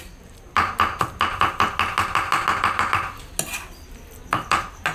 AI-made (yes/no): no